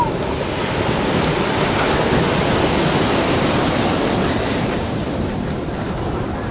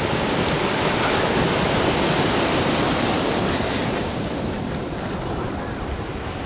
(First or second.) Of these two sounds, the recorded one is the first